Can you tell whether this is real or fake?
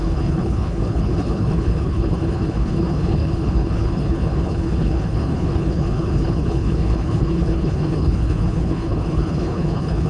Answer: fake